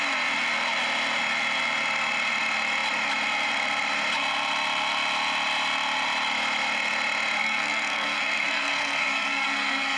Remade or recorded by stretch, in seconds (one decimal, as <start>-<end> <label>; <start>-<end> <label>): 0.0-7.4 recorded; 7.4-10.0 remade